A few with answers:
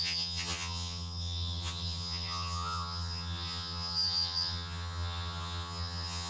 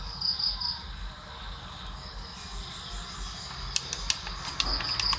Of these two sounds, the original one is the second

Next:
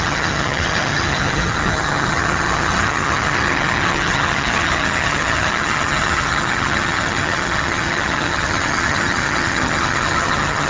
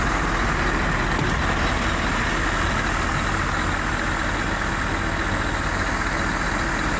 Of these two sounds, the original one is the second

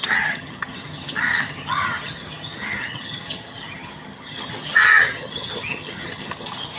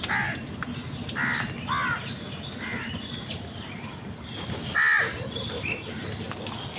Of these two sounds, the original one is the second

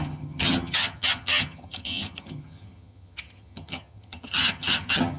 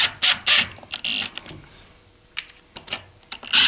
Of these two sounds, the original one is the second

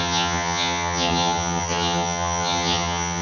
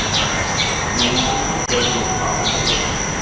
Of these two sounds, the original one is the second